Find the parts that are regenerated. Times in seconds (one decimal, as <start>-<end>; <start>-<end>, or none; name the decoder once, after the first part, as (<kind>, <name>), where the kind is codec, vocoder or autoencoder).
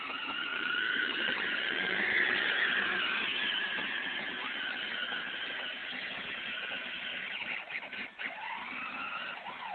0.5-2.5 (vocoder, Vocos); 3.8-5.0